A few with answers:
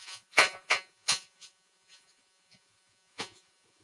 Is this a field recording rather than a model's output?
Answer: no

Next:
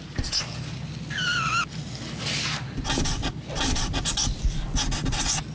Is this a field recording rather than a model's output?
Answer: yes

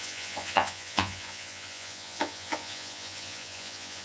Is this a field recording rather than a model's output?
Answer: no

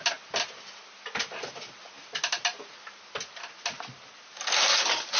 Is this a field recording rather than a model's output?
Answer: yes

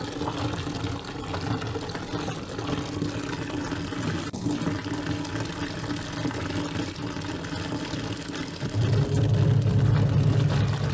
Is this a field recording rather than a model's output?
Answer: yes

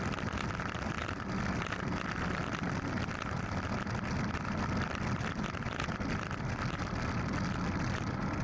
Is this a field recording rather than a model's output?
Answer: yes